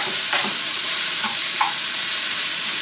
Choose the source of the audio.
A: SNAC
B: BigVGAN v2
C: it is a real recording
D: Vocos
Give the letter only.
B